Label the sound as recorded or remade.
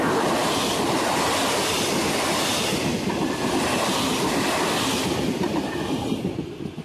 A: recorded